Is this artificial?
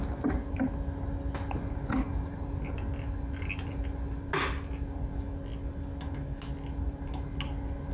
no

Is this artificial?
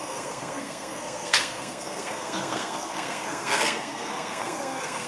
yes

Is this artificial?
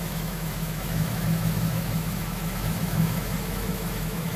yes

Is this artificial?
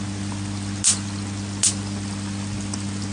no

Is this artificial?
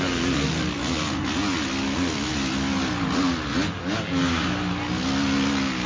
no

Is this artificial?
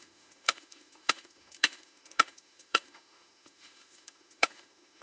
yes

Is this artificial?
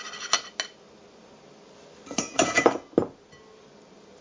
no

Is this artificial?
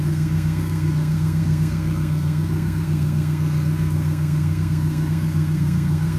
yes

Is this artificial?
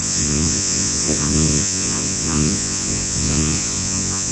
yes